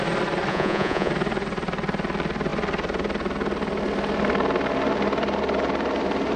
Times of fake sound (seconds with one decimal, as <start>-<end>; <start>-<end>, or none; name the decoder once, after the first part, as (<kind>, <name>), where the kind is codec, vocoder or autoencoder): 0.5-1.1 (vocoder, Vocos)